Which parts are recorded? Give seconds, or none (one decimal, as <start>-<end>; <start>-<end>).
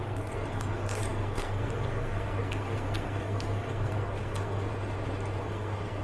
4.7-5.4